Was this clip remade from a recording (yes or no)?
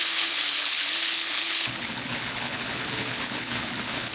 yes